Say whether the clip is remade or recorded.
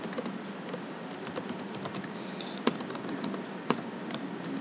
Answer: recorded